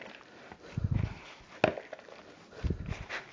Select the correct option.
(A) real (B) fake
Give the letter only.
A